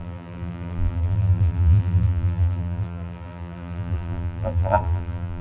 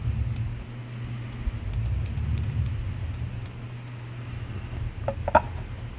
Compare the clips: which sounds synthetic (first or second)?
first